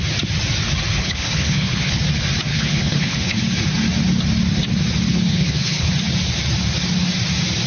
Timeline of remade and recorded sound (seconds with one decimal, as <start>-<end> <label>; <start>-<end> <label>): 0.0-0.9 recorded; 0.9-2.0 remade; 2.0-2.5 recorded; 2.5-3.4 remade; 3.4-5.1 recorded; 5.1-5.9 remade; 5.9-7.7 recorded